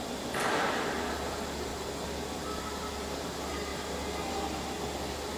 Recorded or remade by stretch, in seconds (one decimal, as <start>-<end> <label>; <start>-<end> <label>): 0.0-5.4 recorded